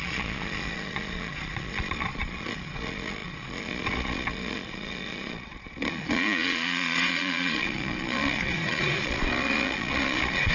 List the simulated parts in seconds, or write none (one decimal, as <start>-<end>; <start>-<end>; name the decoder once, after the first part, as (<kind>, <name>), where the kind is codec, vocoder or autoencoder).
0.0-10.5 (vocoder, Vocos)